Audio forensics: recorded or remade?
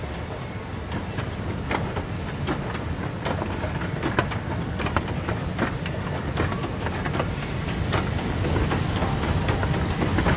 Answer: recorded